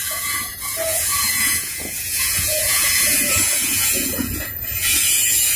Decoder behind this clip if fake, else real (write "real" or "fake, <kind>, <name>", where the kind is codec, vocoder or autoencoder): fake, vocoder, Vocos